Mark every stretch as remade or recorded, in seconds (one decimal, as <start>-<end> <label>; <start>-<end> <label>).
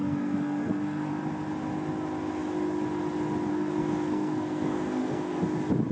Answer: 0.0-1.1 remade; 1.1-3.5 recorded; 3.5-5.4 remade; 5.4-5.9 recorded